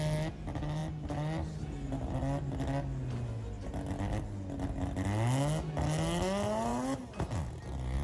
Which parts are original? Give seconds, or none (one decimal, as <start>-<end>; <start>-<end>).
0.0-8.0